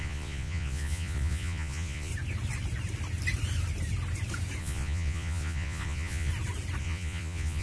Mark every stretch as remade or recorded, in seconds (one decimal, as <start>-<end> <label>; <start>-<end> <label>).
0.0-2.1 remade; 2.1-4.6 recorded; 4.6-6.3 remade; 6.3-6.8 recorded; 6.8-7.6 remade